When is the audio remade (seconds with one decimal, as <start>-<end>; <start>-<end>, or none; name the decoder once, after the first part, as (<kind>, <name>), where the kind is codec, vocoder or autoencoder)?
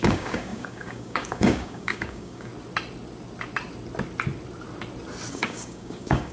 0.0-2.5 (codec, DAC); 5.3-6.3